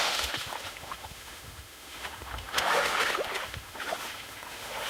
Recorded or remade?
remade